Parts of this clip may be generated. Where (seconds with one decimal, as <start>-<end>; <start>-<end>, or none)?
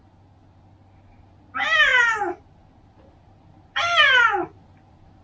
none